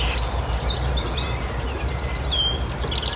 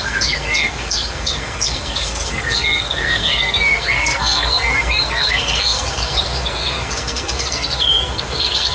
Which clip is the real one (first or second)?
first